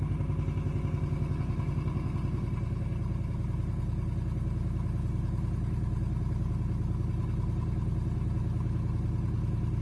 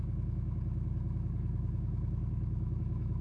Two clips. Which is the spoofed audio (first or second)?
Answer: second